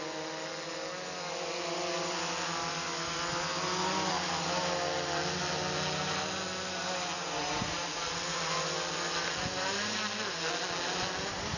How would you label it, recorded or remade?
recorded